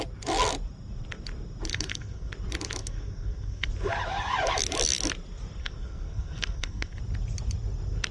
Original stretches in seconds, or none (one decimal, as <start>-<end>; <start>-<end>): 0.0-1.7; 2.3-2.8; 3.7-5.6; 7.0-8.1